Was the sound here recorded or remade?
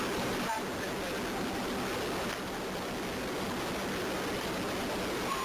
recorded